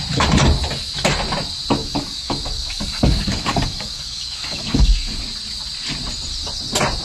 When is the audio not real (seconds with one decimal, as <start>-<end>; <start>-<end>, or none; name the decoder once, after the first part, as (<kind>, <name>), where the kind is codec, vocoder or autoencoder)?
1.8-5.2 (codec, DAC)